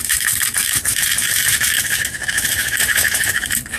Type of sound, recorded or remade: remade